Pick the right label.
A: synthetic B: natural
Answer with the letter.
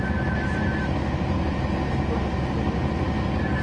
B